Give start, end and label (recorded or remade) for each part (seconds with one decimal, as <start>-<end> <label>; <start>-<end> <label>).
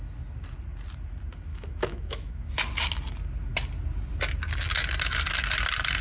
0.0-1.5 recorded; 1.5-2.5 remade; 2.5-6.0 recorded